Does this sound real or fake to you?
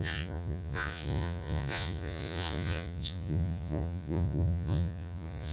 fake